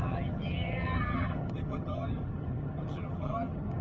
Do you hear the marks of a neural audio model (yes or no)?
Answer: yes